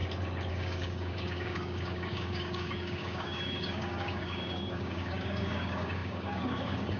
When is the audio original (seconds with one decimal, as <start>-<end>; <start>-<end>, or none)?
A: 0.0-0.5